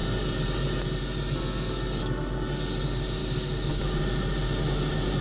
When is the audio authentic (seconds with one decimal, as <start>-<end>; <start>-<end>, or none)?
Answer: 0.0-3.2; 4.0-5.2